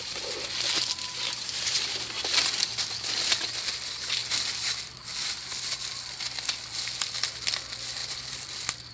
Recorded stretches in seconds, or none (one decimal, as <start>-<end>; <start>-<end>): 0.0-4.2; 5.4-8.0